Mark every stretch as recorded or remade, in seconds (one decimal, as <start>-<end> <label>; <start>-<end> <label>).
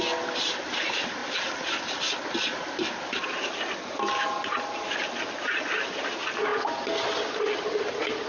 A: 0.0-8.3 recorded